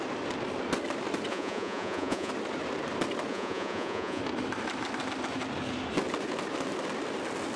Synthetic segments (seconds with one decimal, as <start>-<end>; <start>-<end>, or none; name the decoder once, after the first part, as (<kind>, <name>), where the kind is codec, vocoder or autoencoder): 1.3-2.3 (vocoder, Vocos); 3.3-4.2